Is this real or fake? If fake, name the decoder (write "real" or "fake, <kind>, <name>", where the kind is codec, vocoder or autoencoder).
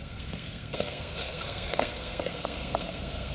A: fake, codec, SNAC